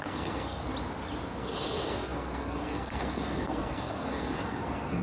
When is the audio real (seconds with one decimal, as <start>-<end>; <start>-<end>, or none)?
0.7-1.2